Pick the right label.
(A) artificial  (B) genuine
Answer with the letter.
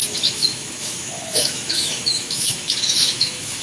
A